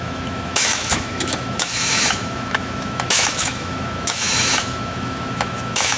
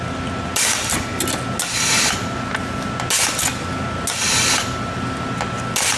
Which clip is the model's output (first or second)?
first